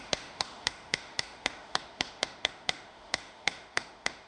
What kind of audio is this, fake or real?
fake